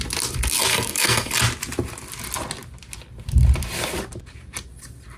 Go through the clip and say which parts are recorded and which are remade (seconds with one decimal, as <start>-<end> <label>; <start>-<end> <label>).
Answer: 0.0-0.7 recorded; 0.7-1.3 remade; 1.3-5.2 recorded